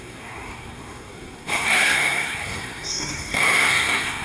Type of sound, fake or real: fake